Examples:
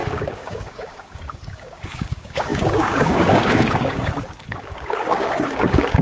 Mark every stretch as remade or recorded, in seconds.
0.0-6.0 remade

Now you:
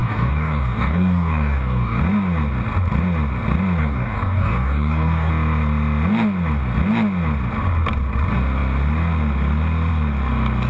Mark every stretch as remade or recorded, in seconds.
0.0-2.0 remade; 2.0-3.8 recorded; 3.8-5.3 remade; 5.3-10.7 recorded

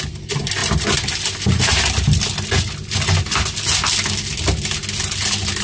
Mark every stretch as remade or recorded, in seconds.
0.0-5.6 recorded